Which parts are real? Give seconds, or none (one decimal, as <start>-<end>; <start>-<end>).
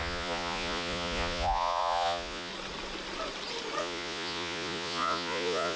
2.5-3.8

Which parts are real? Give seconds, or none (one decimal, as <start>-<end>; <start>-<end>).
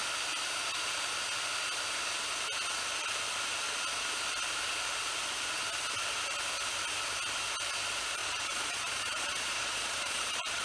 0.0-8.2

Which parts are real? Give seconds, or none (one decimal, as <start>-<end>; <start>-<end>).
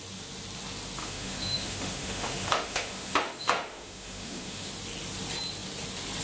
0.0-1.0; 4.7-6.2